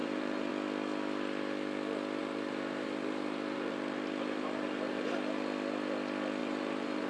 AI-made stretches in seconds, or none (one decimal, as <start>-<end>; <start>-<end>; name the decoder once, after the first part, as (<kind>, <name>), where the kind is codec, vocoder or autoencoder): 0.0-0.5 (vocoder, BigVGAN v2); 2.2-5.1; 6.4-7.1

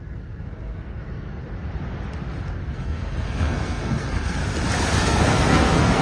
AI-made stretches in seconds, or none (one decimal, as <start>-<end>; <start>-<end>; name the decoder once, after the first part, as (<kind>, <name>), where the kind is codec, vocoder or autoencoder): 0.0-1.4 (codec, SNAC); 2.7-4.4; 5.0-6.0

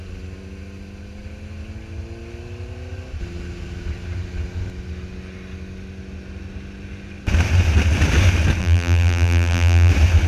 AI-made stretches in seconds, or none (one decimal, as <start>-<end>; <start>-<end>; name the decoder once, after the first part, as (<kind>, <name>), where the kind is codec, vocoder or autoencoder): 8.6-9.9 (vocoder, BigVGAN v2)